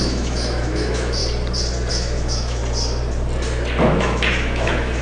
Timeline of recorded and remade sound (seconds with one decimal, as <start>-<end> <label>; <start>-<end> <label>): 0.0-1.2 remade; 1.2-1.9 recorded; 1.9-2.6 remade; 2.6-3.8 recorded; 3.8-5.0 remade